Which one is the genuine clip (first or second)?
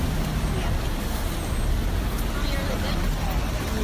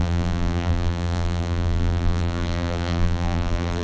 first